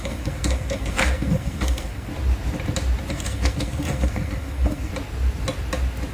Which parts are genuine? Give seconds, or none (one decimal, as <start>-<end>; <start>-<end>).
2.1-3.1; 4.9-6.1